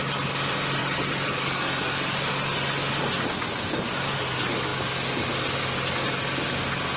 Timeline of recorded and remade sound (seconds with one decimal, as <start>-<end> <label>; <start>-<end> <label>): 0.0-0.8 recorded; 0.8-2.3 remade; 2.3-7.0 recorded